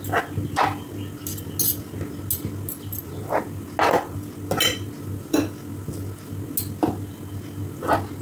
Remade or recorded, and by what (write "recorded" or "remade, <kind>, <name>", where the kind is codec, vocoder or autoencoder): recorded